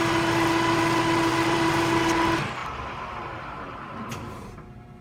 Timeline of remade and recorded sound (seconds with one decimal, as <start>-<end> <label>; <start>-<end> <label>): 0.0-5.0 recorded